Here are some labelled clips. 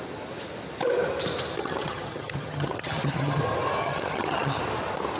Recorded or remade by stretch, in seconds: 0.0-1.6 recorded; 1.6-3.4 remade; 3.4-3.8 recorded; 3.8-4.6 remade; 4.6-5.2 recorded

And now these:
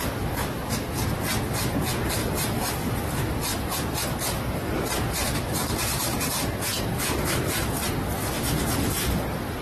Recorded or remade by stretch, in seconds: 0.0-2.2 recorded; 2.2-3.0 remade; 3.0-9.6 recorded